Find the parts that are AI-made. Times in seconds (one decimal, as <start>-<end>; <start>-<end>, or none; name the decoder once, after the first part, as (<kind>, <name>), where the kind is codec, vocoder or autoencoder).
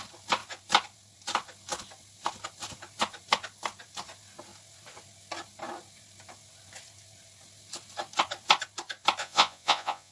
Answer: 9.2-10.1 (vocoder, Vocos)